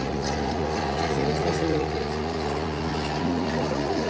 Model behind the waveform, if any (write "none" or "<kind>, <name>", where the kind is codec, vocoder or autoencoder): vocoder, Vocos